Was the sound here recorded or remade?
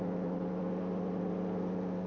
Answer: recorded